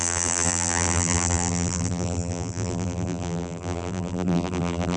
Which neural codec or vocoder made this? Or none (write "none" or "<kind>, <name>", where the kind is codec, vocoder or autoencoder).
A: vocoder, BigVGAN v2